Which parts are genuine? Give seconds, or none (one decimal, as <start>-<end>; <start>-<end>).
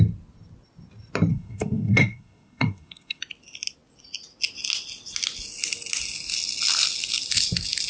0.0-1.3; 3.2-7.9